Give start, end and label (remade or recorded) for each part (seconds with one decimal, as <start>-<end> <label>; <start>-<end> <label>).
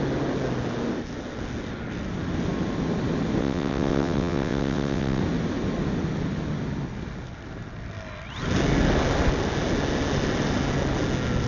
0.0-3.4 recorded; 3.4-5.2 remade; 5.2-11.5 recorded